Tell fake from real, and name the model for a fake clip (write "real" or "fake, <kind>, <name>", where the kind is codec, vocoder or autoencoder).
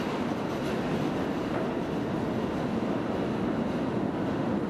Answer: real